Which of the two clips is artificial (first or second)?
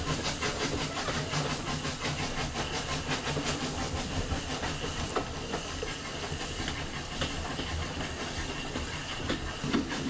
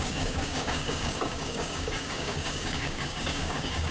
second